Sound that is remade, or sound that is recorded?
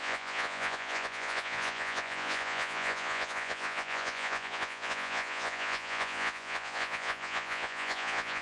remade